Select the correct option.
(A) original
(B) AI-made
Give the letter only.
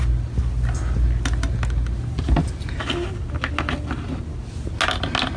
A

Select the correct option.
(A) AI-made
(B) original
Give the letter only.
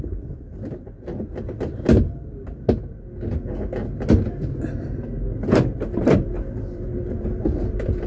B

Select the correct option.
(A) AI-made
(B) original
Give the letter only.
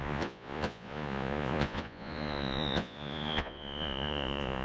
A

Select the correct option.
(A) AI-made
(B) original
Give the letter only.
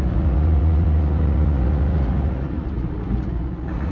A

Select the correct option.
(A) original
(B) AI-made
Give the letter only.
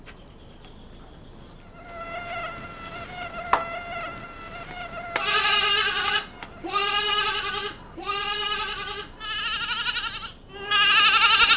A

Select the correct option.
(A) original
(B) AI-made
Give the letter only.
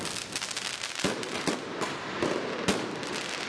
A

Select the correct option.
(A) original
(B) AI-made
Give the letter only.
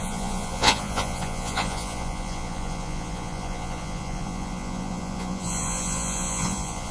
B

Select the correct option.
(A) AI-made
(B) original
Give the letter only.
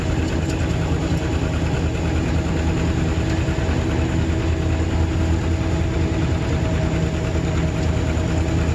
B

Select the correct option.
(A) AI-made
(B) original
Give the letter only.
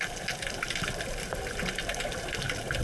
B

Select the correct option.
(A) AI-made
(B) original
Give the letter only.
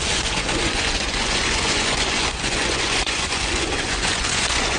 A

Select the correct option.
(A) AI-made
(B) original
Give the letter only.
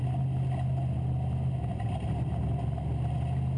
B